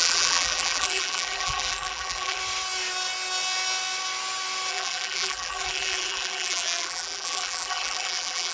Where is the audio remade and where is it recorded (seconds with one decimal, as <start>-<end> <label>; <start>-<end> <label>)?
0.0-2.4 remade; 2.4-4.7 recorded; 4.7-8.5 remade